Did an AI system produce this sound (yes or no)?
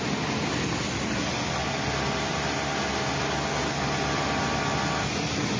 no